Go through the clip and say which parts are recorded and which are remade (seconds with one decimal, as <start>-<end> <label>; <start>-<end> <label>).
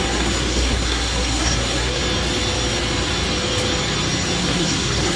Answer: 0.0-2.0 remade; 2.0-4.4 recorded; 4.4-5.2 remade